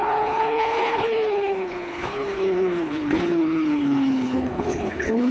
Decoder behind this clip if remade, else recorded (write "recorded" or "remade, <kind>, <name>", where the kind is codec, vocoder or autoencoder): remade, codec, HILCodec